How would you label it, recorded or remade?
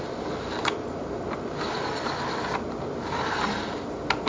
recorded